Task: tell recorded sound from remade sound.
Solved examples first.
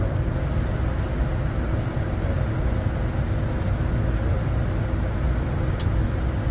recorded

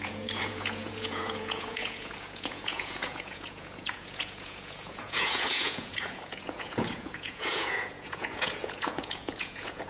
remade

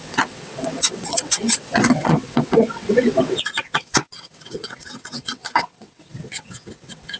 remade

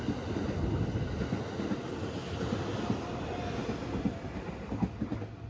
recorded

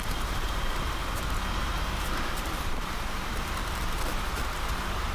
remade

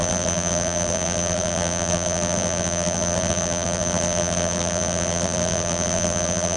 remade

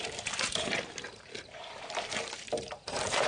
remade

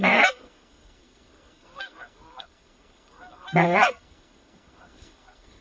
remade